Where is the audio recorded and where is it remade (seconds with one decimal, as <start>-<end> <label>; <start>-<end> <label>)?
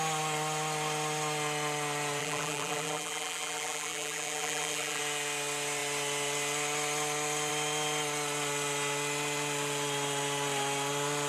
0.0-2.2 recorded; 2.2-5.0 remade; 5.0-11.3 recorded